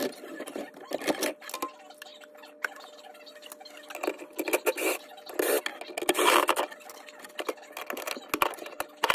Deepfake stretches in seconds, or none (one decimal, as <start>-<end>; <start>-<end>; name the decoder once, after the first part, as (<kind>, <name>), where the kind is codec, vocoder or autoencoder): none